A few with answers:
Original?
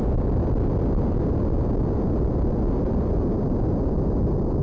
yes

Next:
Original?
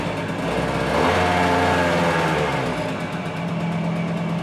yes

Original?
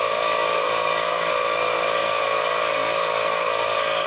no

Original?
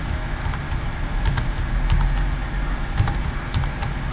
yes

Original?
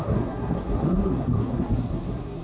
no